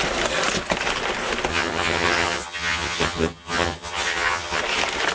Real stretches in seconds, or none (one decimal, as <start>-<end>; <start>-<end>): 0.0-1.5; 4.6-5.1